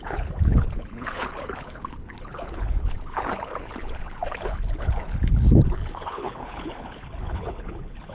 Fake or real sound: fake